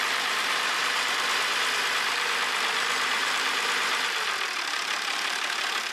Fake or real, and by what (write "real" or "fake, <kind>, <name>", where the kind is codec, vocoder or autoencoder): fake, vocoder, BigVGAN v2